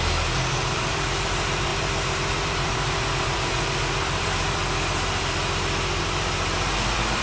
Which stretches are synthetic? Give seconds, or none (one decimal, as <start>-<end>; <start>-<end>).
0.0-7.2